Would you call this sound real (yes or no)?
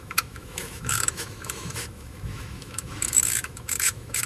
no